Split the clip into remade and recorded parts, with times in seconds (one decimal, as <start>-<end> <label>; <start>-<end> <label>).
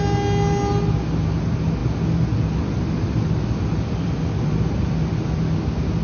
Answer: 0.0-1.8 recorded; 1.8-5.4 remade; 5.4-6.0 recorded